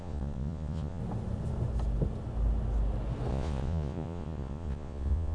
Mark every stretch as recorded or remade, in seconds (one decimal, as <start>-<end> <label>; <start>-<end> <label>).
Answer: 0.0-1.0 remade; 1.0-3.3 recorded; 3.3-5.3 remade